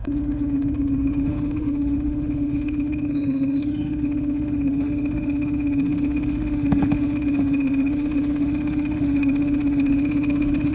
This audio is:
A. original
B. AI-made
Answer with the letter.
B